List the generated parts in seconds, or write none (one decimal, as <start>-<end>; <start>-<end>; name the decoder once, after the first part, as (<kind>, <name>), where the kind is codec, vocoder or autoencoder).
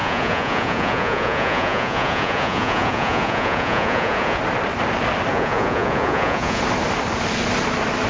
0.0-4.4 (vocoder, Vocos); 5.3-6.6